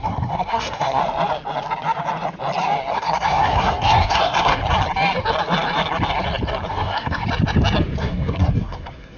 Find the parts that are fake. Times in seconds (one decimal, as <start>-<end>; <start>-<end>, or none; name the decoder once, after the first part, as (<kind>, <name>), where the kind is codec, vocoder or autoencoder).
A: 0.0-1.0 (codec, SNAC); 2.9-4.6; 6.7-7.2; 8.0-9.2